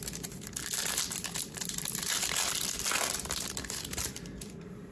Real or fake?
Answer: fake